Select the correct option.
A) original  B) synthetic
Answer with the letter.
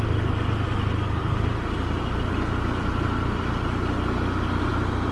A